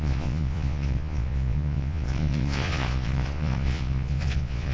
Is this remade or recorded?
remade